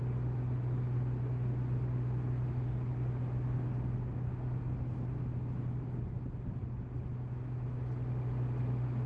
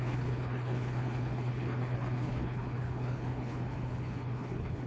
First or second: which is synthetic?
second